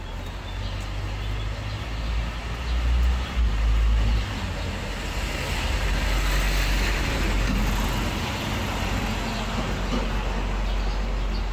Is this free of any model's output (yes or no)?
yes